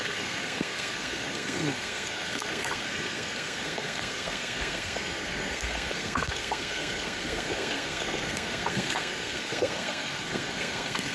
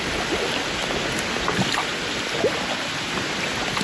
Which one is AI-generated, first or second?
first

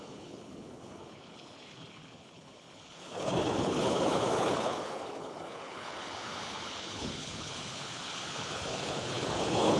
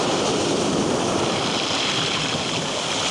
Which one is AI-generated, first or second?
first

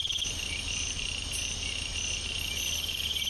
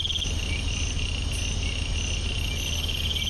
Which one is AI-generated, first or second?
first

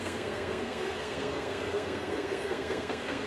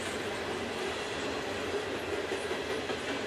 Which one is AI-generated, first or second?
first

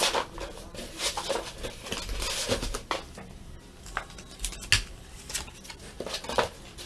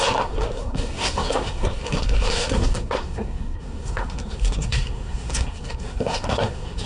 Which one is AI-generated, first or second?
second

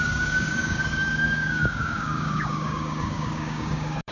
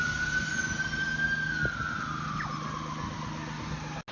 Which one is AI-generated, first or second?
first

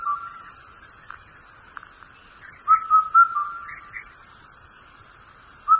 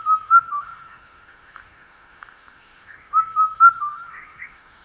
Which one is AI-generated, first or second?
second